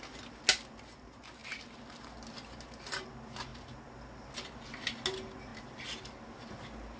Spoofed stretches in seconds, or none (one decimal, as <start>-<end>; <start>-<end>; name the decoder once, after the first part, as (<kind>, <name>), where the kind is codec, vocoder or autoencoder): none